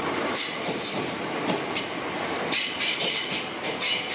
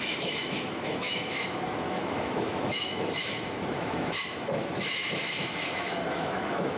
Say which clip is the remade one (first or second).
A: second